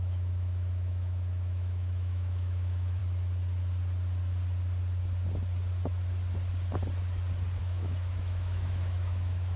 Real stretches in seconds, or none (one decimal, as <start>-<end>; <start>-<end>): 3.0-7.6